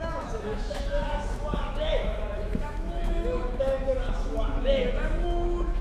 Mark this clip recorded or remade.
remade